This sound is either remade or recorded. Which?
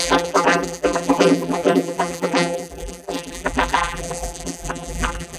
remade